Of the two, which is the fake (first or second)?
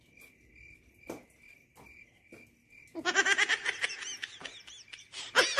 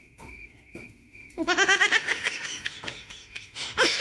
second